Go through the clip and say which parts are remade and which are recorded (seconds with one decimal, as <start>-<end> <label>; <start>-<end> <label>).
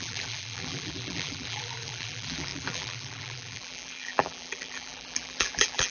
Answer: 0.0-5.9 remade